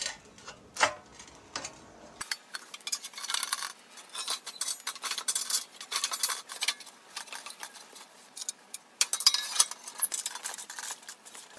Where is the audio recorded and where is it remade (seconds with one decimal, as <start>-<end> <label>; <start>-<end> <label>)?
0.0-11.6 recorded